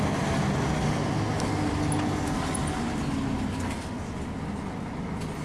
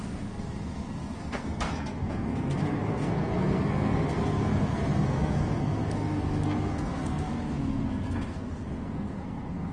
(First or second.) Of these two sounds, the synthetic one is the second